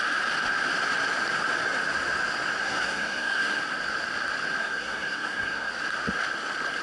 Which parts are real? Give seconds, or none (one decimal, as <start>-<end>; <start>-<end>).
0.0-2.6; 3.6-4.6; 5.7-6.8